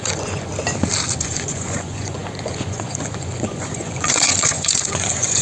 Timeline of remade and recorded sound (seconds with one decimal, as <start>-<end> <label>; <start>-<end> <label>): 0.0-0.5 remade; 0.5-1.2 recorded; 1.2-5.4 remade

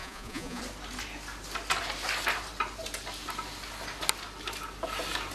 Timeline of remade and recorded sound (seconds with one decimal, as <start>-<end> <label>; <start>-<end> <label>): 0.0-0.6 remade; 0.6-5.3 recorded

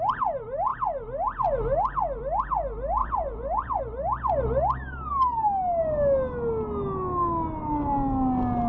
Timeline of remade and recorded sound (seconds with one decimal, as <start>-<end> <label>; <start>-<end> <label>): 0.0-3.0 recorded; 3.0-3.8 remade; 3.8-8.7 recorded

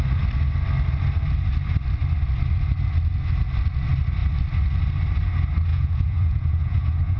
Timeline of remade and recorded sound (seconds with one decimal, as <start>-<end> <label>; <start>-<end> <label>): 0.0-5.7 recorded; 5.7-7.2 remade

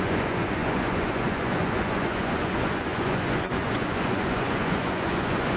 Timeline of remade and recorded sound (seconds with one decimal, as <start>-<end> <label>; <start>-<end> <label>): 0.0-5.6 remade

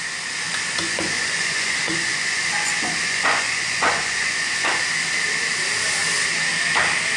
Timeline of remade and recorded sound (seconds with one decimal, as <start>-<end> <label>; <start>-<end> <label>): 0.0-0.5 recorded; 0.5-4.8 remade; 4.8-7.2 recorded